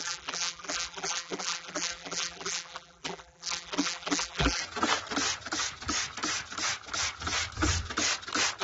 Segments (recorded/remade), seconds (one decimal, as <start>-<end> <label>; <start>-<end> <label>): 0.0-4.6 remade; 4.6-8.6 recorded